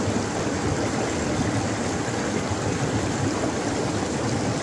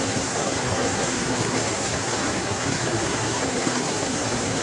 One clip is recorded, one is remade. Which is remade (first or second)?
second